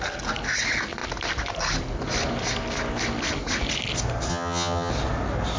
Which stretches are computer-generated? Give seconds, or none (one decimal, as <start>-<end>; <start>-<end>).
4.3-4.9